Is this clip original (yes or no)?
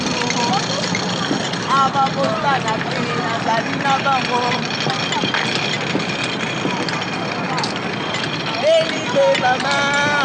yes